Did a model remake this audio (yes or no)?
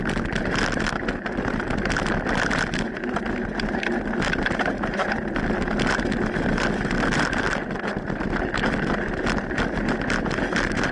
no